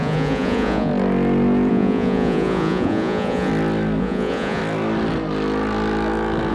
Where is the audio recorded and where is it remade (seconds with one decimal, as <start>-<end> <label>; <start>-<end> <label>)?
0.0-0.9 remade; 0.9-1.7 recorded; 1.7-3.5 remade; 3.5-4.0 recorded; 4.0-4.6 remade; 4.6-6.5 recorded